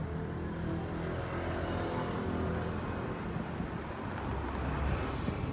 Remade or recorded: recorded